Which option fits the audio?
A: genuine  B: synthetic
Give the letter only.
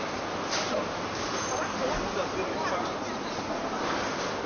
A